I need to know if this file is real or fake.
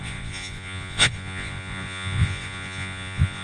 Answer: fake